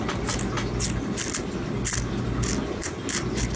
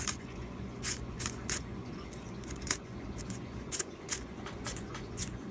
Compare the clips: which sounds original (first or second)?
first